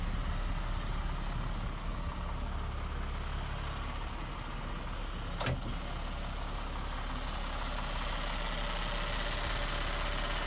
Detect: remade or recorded recorded